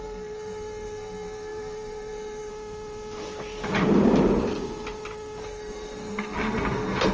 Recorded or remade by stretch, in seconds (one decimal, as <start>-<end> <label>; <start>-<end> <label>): 0.0-2.5 remade; 2.5-5.4 recorded; 5.4-7.1 remade